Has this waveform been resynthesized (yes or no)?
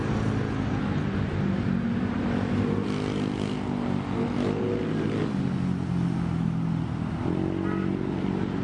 no